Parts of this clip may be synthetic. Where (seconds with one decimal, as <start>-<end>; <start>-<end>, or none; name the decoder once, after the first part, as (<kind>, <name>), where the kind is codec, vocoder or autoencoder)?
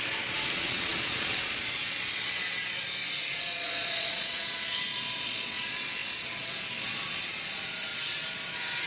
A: 0.0-8.9 (vocoder, Vocos)